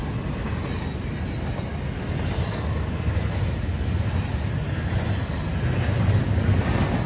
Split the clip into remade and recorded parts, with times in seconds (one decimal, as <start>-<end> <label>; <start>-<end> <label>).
0.0-7.1 recorded